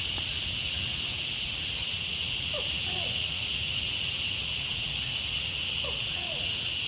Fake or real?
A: fake